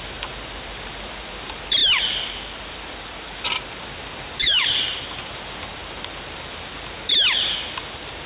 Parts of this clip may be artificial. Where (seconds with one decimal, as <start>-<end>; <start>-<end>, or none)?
4.4-5.0